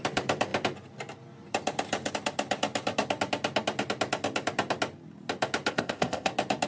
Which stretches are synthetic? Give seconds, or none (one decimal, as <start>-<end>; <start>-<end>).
5.7-6.3